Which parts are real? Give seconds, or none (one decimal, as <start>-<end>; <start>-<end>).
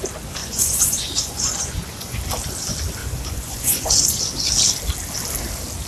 0.0-0.4; 2.2-3.0; 4.2-5.9